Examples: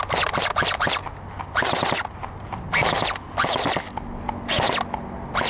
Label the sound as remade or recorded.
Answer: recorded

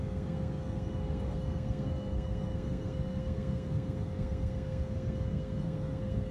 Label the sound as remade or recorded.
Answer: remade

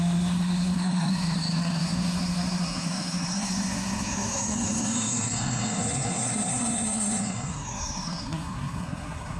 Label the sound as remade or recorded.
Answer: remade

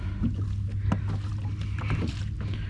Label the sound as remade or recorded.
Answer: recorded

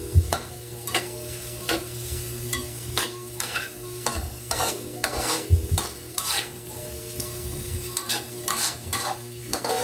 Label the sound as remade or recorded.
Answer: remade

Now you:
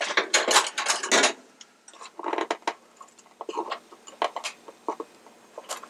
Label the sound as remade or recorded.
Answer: recorded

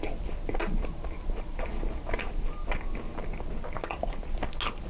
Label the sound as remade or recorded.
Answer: recorded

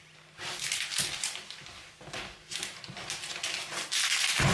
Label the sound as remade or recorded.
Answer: recorded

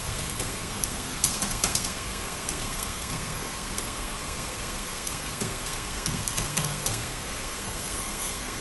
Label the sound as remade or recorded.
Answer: remade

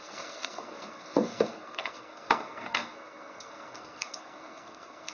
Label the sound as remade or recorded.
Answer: remade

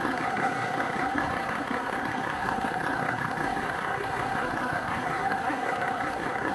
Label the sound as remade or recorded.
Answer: remade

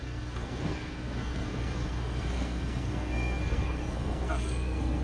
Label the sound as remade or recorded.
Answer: remade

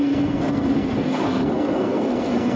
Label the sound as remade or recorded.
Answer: remade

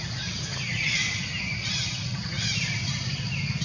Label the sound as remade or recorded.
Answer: recorded